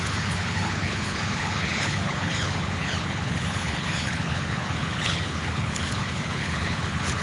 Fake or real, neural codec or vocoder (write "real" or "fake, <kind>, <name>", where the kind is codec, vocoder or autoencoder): fake, codec, HILCodec